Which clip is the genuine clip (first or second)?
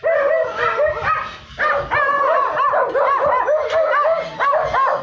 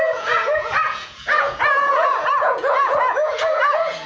first